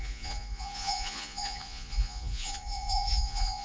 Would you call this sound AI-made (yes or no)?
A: yes